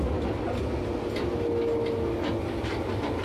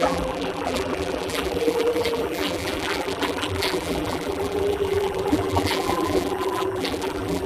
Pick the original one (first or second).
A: first